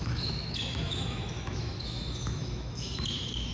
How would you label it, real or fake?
fake